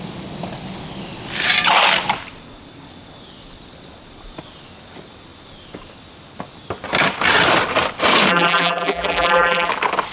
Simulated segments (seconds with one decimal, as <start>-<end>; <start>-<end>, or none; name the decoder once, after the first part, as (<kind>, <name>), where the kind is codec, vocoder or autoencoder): 8.3-9.7 (vocoder, BigVGAN v2)